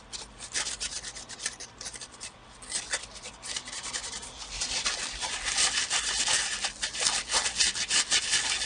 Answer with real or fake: real